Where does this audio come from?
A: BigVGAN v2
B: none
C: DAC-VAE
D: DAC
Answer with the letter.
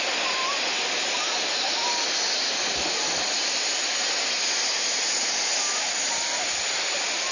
B